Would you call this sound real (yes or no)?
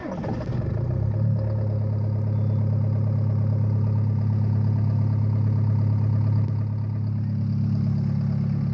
yes